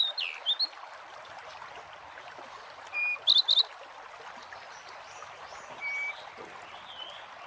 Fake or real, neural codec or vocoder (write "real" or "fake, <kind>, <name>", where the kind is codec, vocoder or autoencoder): real